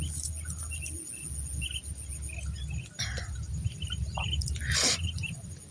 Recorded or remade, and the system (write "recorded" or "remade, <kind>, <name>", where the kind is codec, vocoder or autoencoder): recorded